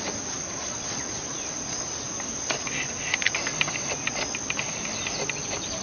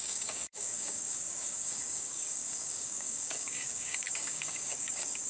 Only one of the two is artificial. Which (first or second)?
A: second